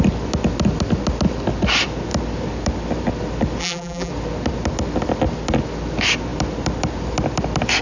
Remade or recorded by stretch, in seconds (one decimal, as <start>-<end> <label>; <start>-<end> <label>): 0.0-3.6 recorded; 3.6-4.1 remade; 4.1-7.8 recorded